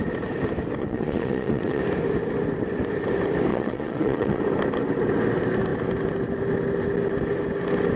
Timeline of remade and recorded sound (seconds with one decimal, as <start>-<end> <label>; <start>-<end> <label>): 0.0-0.8 recorded; 0.8-1.8 remade; 1.8-3.5 recorded; 3.5-4.4 remade; 4.4-8.0 recorded